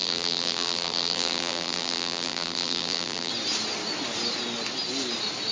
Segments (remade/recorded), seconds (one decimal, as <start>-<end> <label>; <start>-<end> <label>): 0.0-3.3 remade; 3.3-5.5 recorded